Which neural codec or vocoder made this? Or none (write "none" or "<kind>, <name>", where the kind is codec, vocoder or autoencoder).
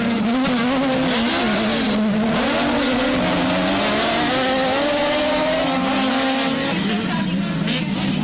none